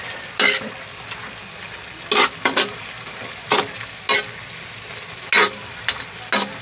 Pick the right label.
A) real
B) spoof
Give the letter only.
A